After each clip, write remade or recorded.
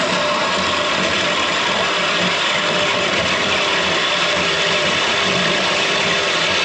remade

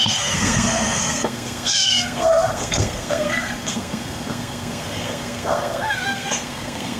remade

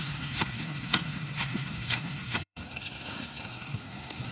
remade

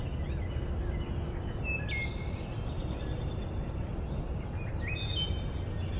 recorded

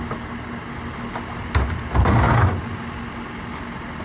recorded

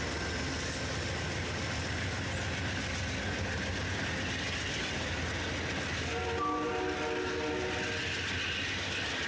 recorded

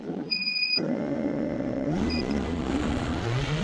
remade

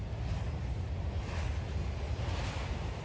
recorded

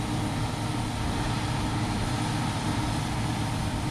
recorded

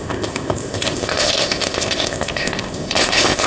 remade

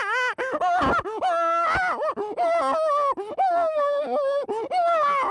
recorded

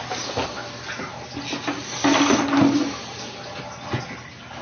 recorded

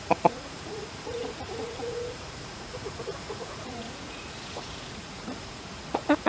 remade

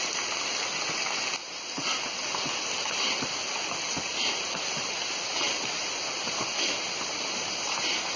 recorded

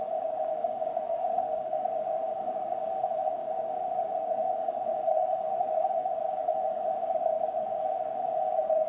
remade